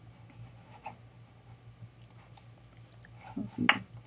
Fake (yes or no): no